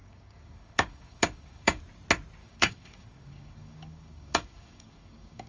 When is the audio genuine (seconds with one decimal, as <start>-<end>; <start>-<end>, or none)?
1.8-2.4